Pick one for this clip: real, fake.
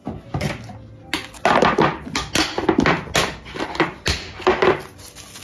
real